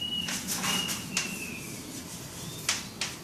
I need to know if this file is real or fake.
real